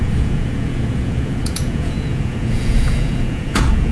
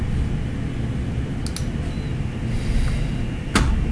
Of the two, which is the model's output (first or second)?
first